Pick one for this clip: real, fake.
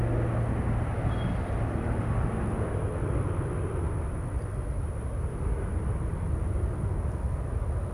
real